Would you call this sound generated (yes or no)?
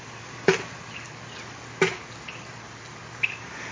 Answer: no